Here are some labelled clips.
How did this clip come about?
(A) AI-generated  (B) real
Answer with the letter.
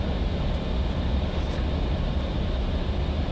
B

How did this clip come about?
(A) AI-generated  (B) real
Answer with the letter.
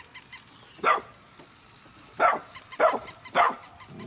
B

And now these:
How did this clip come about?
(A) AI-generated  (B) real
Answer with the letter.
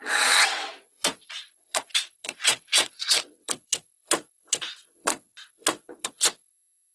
A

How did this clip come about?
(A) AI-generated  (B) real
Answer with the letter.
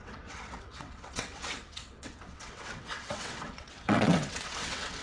A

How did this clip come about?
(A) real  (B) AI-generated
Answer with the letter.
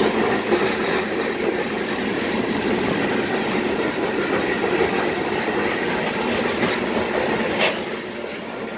A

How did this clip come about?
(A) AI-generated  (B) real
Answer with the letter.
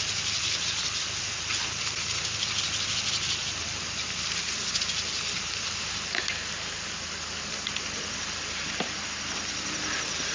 B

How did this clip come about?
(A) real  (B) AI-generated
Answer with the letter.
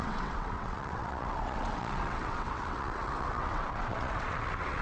B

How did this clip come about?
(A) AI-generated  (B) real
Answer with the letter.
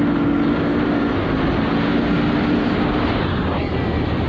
B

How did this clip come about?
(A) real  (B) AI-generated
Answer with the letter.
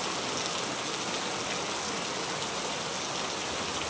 A